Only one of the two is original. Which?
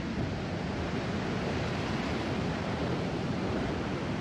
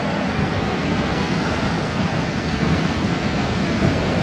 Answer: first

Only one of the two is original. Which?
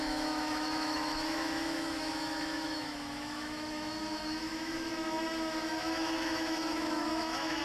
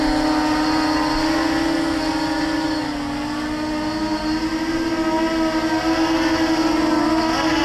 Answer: second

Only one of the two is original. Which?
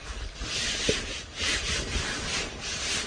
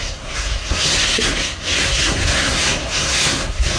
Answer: first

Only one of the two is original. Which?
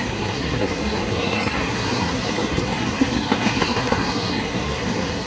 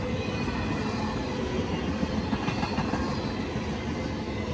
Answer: second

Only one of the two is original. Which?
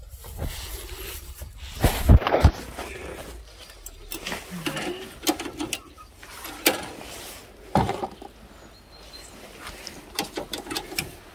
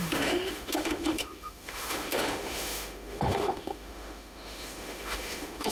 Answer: first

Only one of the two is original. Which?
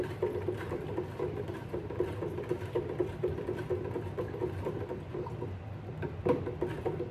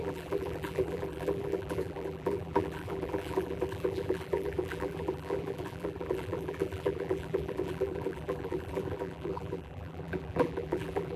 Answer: first